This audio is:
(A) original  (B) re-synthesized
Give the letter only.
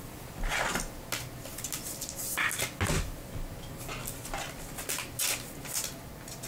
A